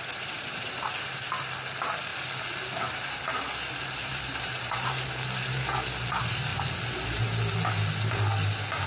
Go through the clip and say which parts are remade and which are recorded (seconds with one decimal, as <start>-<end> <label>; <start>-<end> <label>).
0.0-3.8 recorded; 3.8-5.1 remade; 5.1-8.9 recorded